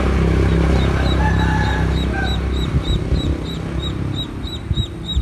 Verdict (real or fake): real